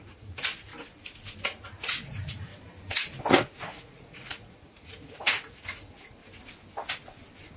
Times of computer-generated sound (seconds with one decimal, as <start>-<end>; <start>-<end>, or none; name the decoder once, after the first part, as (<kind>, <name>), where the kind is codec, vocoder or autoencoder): 0.0-0.7 (vocoder, Vocos); 1.6-2.5; 3.3-6.2